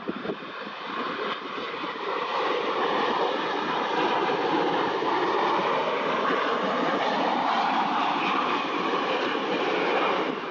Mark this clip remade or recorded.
remade